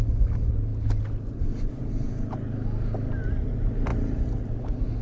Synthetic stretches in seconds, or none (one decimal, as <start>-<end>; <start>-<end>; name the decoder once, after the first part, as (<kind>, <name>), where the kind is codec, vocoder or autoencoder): none